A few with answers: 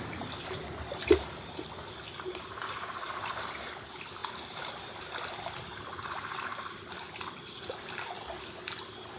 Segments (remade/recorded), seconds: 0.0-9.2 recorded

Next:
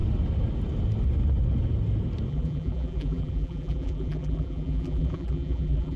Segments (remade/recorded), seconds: 0.0-2.3 recorded; 2.3-6.0 remade

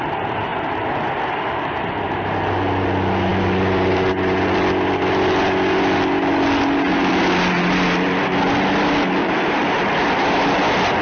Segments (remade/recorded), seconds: 0.0-11.0 recorded

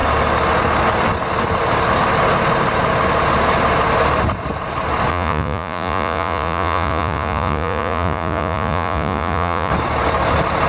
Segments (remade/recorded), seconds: 0.0-5.1 recorded; 5.1-9.7 remade; 9.7-10.7 recorded

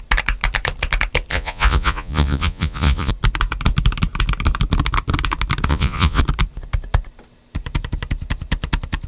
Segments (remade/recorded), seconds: 0.0-1.3 recorded; 1.3-3.1 remade; 3.1-5.7 recorded; 5.7-6.2 remade; 6.2-9.1 recorded

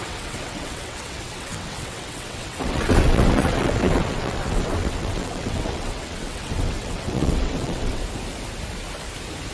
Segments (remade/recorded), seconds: 0.0-8.0 remade; 8.0-9.5 recorded